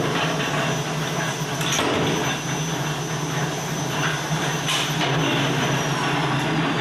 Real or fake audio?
real